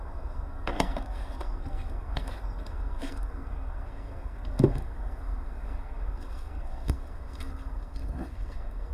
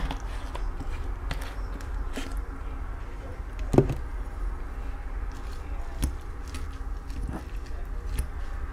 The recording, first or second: second